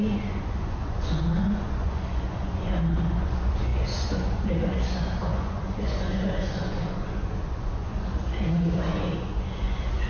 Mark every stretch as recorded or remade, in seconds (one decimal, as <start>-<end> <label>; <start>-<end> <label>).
0.0-10.1 remade